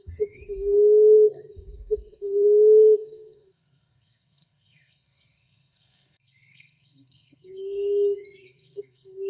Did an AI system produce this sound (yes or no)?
yes